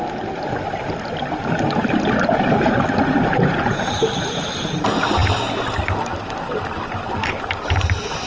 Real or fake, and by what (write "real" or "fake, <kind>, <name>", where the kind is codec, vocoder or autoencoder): real